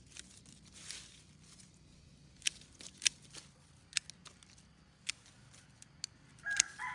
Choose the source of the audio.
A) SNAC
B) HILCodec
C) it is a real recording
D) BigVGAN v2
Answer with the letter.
C